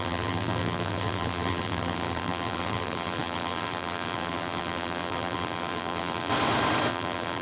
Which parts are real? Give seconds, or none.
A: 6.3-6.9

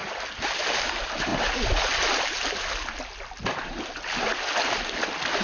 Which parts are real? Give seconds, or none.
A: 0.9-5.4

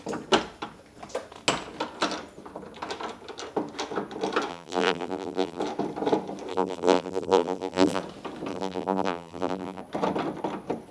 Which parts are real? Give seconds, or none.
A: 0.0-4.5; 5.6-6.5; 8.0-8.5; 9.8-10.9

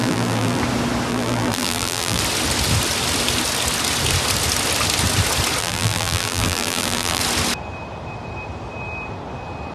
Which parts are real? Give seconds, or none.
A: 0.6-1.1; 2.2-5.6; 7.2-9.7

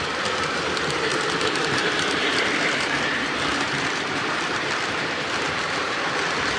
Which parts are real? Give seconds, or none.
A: 0.0-1.8; 5.6-6.6

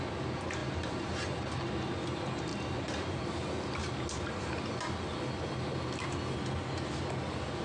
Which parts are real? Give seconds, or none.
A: 0.0-0.6; 1.7-2.5; 3.2-7.6